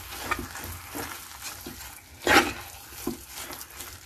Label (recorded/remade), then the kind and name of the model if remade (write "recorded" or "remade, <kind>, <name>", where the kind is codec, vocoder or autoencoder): recorded